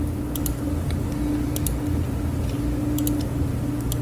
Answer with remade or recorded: recorded